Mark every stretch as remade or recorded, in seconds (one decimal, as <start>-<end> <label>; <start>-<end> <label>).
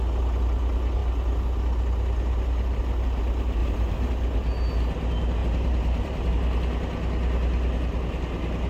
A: 0.0-3.6 recorded; 3.6-4.1 remade; 4.1-5.4 recorded; 5.4-6.3 remade; 6.3-8.7 recorded